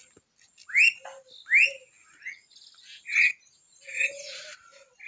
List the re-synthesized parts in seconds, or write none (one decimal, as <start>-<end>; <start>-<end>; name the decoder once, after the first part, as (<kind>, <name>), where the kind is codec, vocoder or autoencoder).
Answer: none